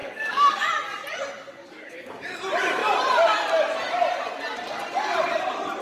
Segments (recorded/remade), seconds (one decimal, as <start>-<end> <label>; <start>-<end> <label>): 0.0-0.7 remade; 0.7-1.4 recorded; 1.4-2.4 remade; 2.4-5.8 recorded